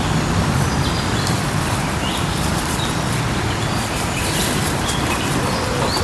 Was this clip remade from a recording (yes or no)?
no